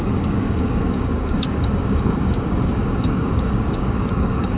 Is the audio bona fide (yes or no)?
no